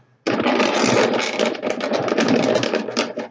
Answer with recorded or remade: recorded